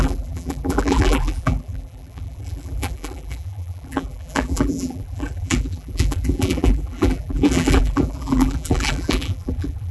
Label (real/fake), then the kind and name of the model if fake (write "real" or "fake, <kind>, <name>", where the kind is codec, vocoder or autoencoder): fake, vocoder, BigVGAN v2